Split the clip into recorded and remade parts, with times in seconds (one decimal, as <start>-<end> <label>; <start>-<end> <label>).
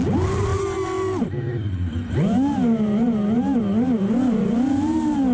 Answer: 0.0-5.3 recorded